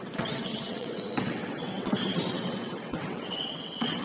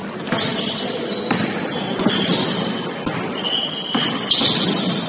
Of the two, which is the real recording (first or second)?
second